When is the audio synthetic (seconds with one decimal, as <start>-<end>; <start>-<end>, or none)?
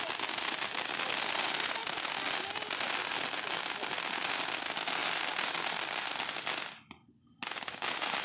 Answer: 5.0-6.6